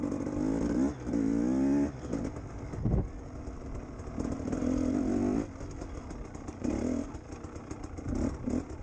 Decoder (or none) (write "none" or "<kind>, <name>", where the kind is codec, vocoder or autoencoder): none